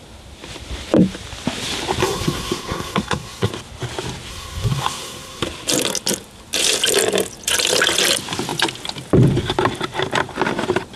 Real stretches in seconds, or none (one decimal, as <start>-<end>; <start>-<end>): 0.0-2.0; 3.5-4.3; 5.4-11.0